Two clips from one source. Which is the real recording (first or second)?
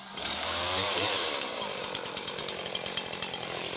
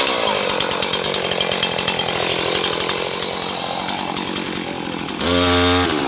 second